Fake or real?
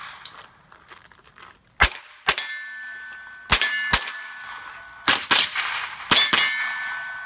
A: real